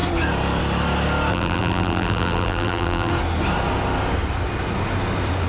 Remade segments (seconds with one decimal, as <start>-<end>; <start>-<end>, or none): 1.3-3.1